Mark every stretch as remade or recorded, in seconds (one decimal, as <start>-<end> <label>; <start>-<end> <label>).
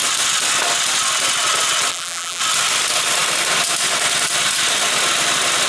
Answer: 0.0-1.9 recorded; 1.9-2.4 remade; 2.4-5.7 recorded